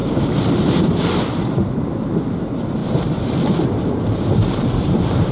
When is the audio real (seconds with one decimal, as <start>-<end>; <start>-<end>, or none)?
none